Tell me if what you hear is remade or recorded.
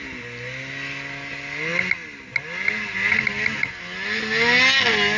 recorded